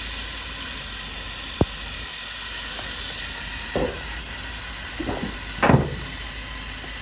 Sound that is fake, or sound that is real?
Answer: real